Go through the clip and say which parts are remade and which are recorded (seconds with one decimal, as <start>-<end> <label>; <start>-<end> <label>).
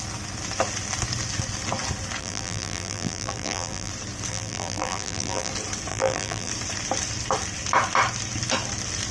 0.0-2.2 recorded; 2.2-3.9 remade; 3.9-4.3 recorded; 4.3-5.5 remade; 5.5-5.9 recorded; 5.9-6.5 remade; 6.5-9.1 recorded